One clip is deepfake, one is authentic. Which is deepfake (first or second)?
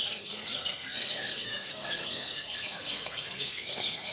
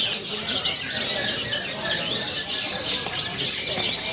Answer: first